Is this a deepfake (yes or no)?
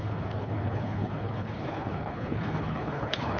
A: yes